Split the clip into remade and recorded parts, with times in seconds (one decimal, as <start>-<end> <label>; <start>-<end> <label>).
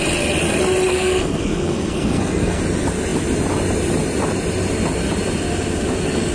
0.0-0.9 recorded; 0.9-2.6 remade; 2.6-6.3 recorded